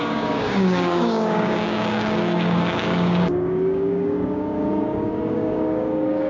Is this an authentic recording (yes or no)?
no